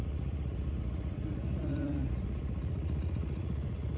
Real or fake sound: fake